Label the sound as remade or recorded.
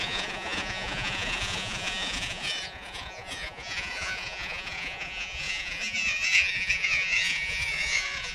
remade